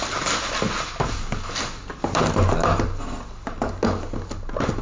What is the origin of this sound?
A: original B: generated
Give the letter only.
A